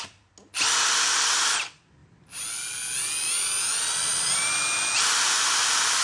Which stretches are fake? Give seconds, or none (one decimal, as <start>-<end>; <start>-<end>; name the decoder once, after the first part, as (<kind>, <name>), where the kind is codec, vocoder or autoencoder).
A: none